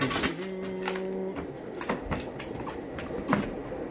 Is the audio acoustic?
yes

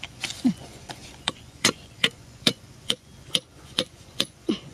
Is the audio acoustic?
no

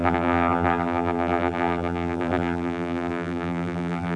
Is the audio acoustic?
no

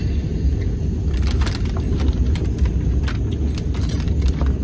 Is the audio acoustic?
yes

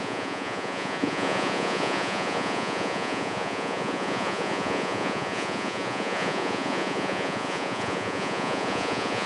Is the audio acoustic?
no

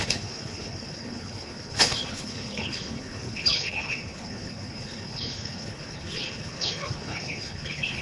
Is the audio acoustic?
no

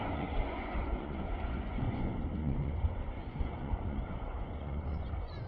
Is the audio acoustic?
no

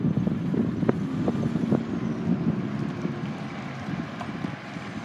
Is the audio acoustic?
yes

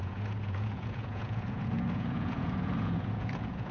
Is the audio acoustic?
no